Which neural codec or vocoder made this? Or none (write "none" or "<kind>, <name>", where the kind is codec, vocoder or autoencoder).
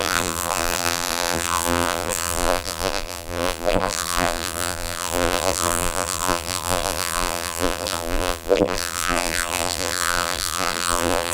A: vocoder, BigVGAN v2